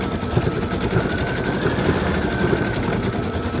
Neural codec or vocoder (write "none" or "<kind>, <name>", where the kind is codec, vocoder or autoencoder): none